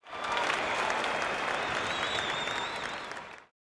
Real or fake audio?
fake